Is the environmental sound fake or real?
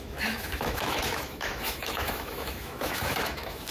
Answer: fake